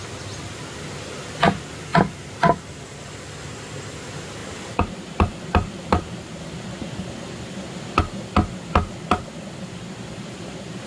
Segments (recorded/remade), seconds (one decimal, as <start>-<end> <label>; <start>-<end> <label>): 0.0-10.9 recorded